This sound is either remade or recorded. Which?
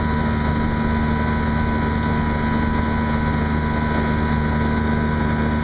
recorded